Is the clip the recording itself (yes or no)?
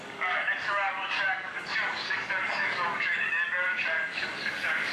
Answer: no